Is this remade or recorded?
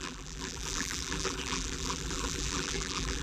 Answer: remade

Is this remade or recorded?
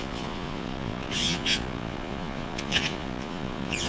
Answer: remade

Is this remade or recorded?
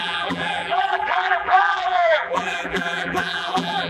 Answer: remade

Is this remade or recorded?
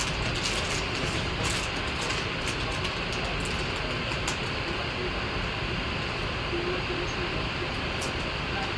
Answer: recorded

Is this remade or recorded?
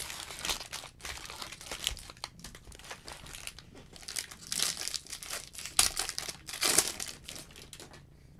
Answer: recorded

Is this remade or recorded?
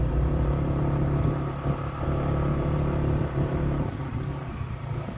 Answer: remade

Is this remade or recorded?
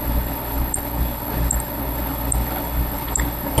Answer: remade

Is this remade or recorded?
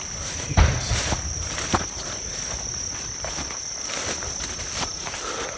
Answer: recorded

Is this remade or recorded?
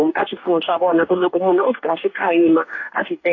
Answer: remade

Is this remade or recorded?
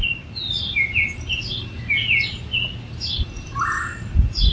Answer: recorded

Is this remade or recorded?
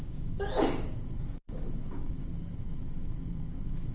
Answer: remade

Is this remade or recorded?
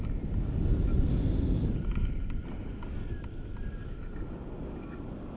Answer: recorded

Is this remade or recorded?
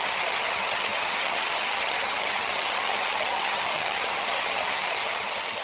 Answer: remade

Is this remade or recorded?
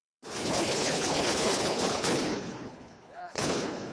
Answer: remade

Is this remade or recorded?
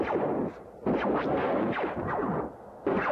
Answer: recorded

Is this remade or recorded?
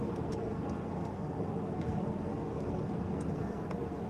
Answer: remade